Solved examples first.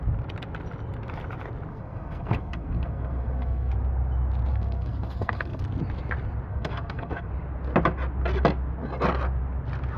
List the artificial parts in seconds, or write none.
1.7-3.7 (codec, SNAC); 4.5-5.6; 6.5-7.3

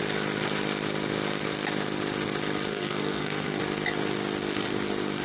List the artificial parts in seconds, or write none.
2.7-3.6 (codec, SNAC)

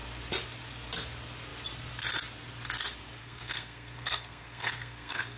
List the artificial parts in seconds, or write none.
3.2-5.4 (codec, SNAC)

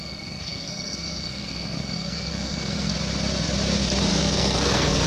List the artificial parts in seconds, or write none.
0.0-2.9 (codec, SNAC); 4.1-5.1

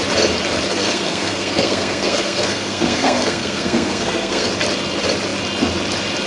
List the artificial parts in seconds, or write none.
0.7-4.5 (codec, SNAC)

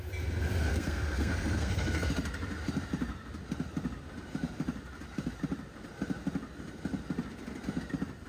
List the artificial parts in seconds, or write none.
0.7-2.1 (codec, SNAC)